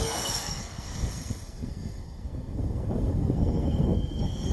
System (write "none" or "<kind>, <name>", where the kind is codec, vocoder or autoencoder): codec, SNAC